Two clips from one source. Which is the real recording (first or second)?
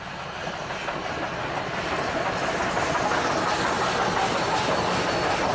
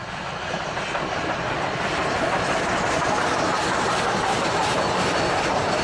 first